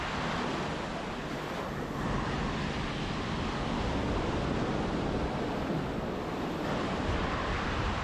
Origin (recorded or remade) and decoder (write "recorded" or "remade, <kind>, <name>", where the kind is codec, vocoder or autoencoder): recorded